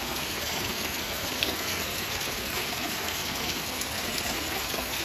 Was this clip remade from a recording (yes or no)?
yes